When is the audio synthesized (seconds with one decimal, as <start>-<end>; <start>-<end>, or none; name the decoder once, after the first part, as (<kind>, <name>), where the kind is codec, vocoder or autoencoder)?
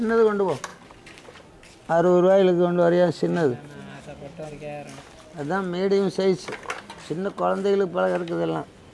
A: none